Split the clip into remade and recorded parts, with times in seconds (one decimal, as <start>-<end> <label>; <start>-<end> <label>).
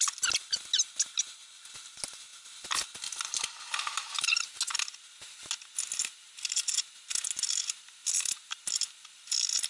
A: 0.0-9.7 recorded